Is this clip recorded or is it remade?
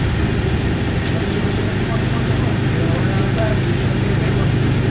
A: recorded